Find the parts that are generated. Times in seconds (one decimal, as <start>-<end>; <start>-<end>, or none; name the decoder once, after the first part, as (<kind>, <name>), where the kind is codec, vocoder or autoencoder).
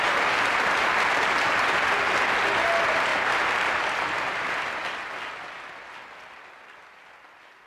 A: 3.1-4.7 (vocoder, BigVGAN v2)